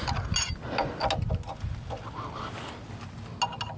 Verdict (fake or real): real